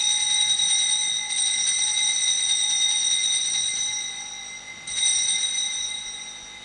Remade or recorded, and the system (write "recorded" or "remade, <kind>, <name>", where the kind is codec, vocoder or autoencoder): recorded